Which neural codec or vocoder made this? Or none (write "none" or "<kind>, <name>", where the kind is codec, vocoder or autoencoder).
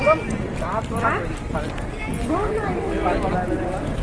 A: none